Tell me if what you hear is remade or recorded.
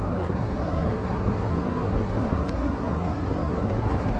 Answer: remade